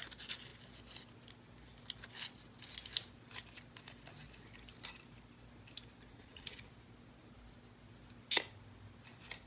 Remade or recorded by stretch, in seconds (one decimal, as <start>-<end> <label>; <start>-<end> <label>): 0.0-6.1 recorded; 6.1-6.7 remade; 6.7-9.5 recorded